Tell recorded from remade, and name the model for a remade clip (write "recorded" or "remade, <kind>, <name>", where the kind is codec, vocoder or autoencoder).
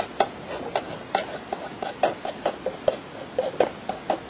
recorded